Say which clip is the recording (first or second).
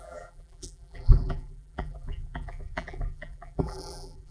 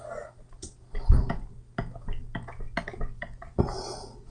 second